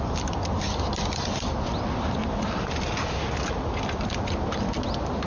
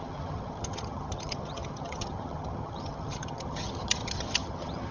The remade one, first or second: second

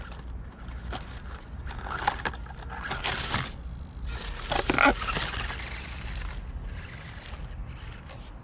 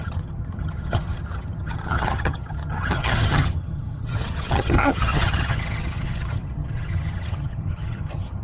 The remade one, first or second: second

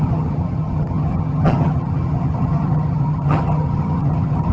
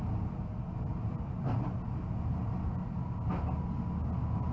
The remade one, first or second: first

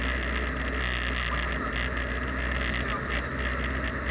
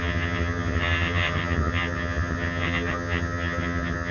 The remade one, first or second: second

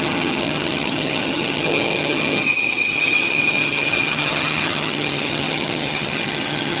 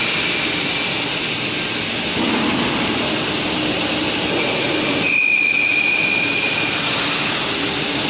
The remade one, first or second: first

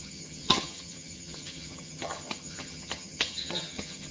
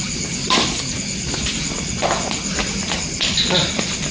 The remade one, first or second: first